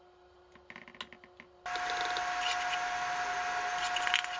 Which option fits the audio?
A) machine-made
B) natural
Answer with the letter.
B